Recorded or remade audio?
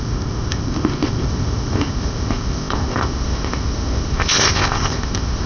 remade